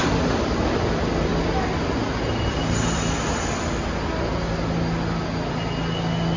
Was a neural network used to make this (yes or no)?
no